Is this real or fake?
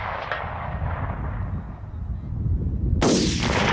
real